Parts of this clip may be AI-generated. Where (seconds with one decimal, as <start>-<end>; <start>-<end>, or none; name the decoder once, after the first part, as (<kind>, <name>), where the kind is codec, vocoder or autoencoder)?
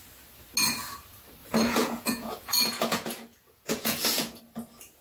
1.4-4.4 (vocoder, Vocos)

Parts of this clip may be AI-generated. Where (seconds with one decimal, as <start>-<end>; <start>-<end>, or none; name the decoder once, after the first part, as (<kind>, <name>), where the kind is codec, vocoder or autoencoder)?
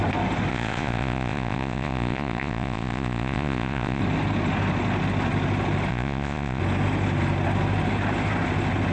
0.5-4.0 (vocoder, Vocos); 5.9-6.6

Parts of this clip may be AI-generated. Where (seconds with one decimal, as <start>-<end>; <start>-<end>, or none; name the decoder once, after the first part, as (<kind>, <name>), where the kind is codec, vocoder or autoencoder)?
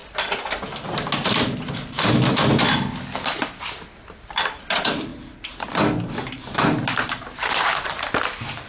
none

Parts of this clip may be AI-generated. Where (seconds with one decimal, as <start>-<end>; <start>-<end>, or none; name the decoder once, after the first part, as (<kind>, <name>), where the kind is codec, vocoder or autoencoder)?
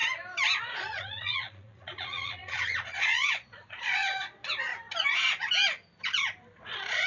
0.6-4.7 (vocoder, Vocos); 6.6-7.1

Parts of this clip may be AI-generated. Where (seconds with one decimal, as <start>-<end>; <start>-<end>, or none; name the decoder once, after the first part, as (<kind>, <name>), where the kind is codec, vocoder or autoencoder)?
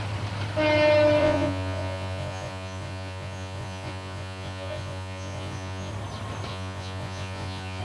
1.2-5.9 (vocoder, Vocos); 6.5-7.8